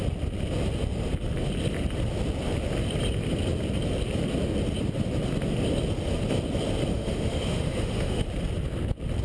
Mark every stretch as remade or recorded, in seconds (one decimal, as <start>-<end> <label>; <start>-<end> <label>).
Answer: 0.0-6.9 recorded; 6.9-8.2 remade; 8.2-9.2 recorded